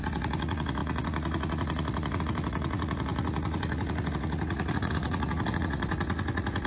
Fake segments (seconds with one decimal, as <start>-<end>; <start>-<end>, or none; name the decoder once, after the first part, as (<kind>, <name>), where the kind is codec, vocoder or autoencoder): 0.0-6.7 (vocoder, Vocos)